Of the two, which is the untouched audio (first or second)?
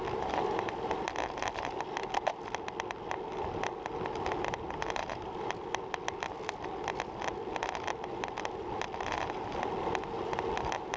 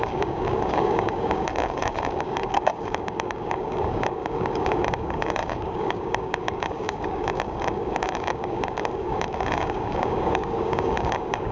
first